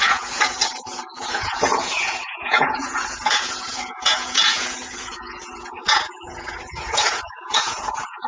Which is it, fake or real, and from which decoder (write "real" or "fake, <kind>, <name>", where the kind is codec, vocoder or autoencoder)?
fake, vocoder, Vocos